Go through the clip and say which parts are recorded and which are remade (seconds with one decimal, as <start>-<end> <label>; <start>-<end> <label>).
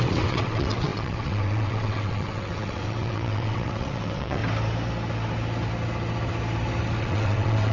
0.0-4.4 remade; 4.4-7.0 recorded; 7.0-7.7 remade